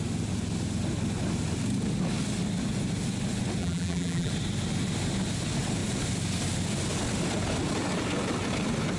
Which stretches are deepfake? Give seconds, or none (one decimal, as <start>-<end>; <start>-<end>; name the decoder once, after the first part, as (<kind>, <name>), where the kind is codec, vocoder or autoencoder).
3.6-4.3 (vocoder, BigVGAN v2)

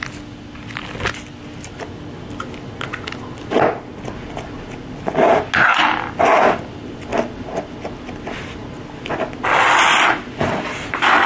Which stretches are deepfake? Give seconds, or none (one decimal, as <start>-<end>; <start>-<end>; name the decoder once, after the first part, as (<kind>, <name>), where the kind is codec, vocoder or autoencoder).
none

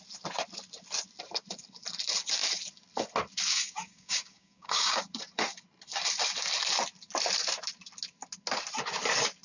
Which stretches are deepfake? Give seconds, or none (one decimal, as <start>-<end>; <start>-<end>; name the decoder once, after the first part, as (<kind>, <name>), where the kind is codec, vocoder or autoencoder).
3.5-5.0 (codec, DAC)